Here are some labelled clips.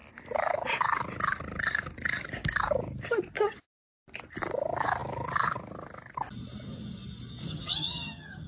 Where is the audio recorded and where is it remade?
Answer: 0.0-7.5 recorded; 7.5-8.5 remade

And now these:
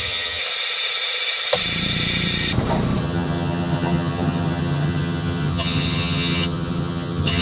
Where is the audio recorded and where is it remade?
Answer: 0.0-0.4 remade; 0.4-3.0 recorded; 3.0-7.4 remade

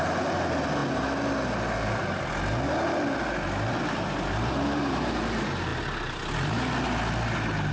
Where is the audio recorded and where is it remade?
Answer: 0.0-7.7 recorded

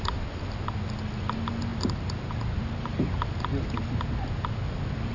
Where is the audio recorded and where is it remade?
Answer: 0.0-5.1 recorded

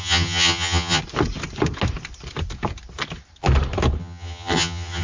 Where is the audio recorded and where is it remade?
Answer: 0.0-1.0 remade; 1.0-4.0 recorded; 4.0-5.0 remade

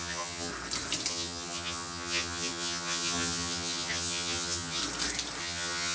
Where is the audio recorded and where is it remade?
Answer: 0.0-0.5 remade; 0.5-1.1 recorded; 1.1-4.8 remade; 4.8-5.4 recorded; 5.4-5.9 remade

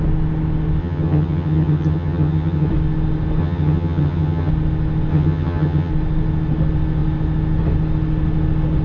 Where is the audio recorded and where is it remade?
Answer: 0.0-0.8 recorded; 0.8-2.7 remade; 2.7-3.4 recorded; 3.4-4.5 remade; 4.5-5.1 recorded; 5.1-5.9 remade; 5.9-8.8 recorded

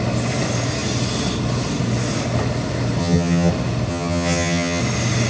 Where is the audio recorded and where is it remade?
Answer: 0.0-3.0 recorded; 3.0-3.5 remade; 3.5-3.9 recorded; 3.9-4.8 remade; 4.8-5.3 recorded